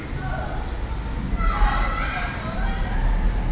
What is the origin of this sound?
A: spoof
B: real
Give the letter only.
B